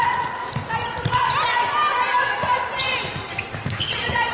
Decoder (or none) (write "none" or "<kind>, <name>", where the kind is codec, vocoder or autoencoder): none